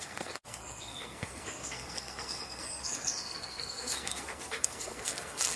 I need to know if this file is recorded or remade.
remade